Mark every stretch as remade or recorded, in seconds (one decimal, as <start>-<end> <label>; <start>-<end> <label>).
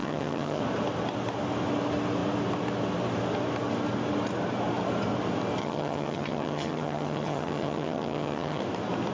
0.0-0.6 remade; 0.6-5.6 recorded; 5.6-8.6 remade; 8.6-9.1 recorded